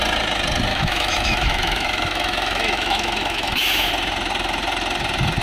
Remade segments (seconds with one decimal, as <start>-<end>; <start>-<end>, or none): 0.7-3.9